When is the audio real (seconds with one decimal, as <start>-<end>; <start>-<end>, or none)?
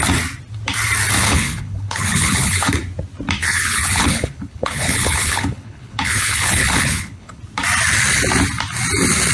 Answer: 0.0-1.2; 2.7-3.4; 7.4-9.3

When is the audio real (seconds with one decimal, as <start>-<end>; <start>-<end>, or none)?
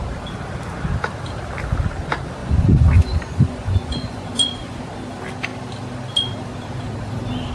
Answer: 0.0-2.4; 4.8-7.5